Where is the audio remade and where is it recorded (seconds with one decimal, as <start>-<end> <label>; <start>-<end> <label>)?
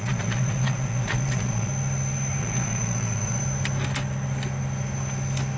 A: 0.0-1.7 remade; 1.7-2.4 recorded; 2.4-3.4 remade; 3.4-5.6 recorded